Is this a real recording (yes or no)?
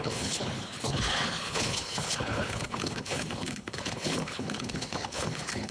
no